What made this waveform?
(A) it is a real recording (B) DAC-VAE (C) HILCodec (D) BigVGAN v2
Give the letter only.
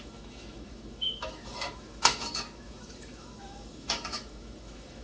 B